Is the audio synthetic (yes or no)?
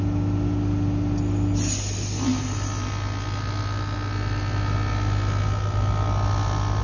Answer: no